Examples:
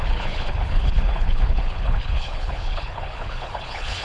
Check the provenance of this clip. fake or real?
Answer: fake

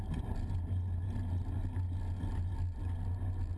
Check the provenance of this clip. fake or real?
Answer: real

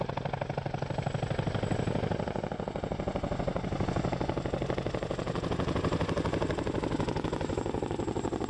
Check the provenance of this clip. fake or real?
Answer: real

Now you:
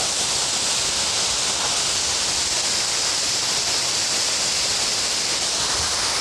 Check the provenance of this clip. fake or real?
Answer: real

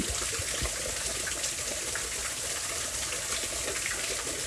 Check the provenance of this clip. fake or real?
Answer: real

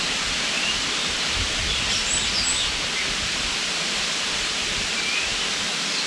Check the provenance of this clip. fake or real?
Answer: real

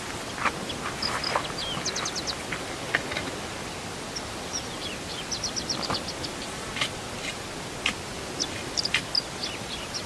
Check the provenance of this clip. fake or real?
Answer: real